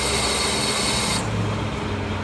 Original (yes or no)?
yes